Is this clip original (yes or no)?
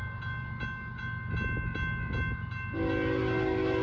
yes